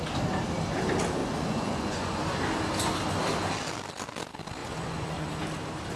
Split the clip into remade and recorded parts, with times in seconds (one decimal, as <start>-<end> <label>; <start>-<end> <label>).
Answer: 0.0-1.2 recorded; 1.2-2.2 remade; 2.2-4.6 recorded; 4.6-5.3 remade; 5.3-6.0 recorded